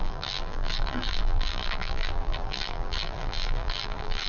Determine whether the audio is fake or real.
fake